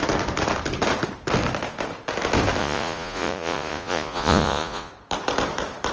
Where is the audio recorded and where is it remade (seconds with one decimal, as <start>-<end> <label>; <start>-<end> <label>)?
0.0-2.6 recorded; 2.6-4.9 remade; 4.9-5.9 recorded